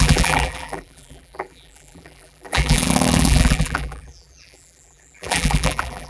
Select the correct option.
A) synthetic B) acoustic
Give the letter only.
A